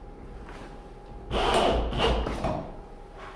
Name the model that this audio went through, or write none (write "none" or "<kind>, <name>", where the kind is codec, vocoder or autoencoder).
none